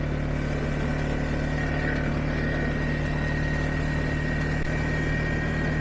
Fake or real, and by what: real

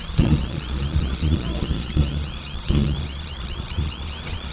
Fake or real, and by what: fake, vocoder, Vocos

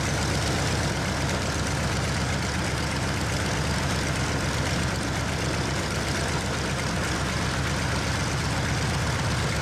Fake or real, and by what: real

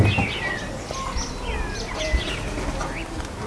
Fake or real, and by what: real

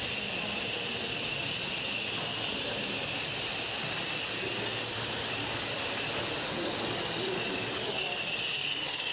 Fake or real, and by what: real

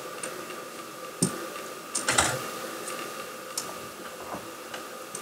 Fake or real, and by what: real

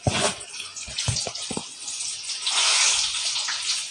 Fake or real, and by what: fake, vocoder, Vocos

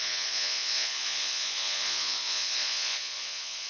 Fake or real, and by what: fake, vocoder, Vocos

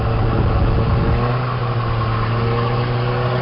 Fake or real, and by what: real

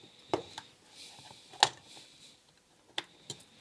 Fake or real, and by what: real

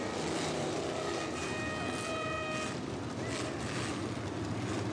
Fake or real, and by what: real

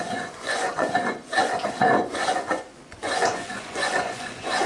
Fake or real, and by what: fake, vocoder, Vocos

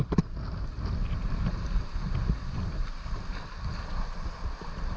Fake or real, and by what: real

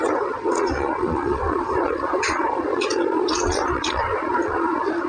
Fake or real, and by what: fake, vocoder, Vocos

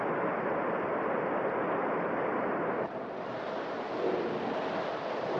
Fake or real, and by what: real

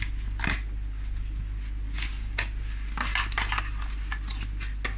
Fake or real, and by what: real